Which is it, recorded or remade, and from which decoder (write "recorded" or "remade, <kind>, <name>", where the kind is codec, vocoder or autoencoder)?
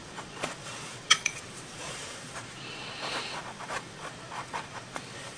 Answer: remade, vocoder, Vocos